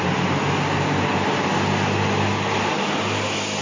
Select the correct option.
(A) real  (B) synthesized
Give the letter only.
A